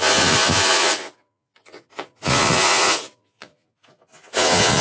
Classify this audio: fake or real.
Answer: fake